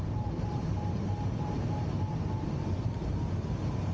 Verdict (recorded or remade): remade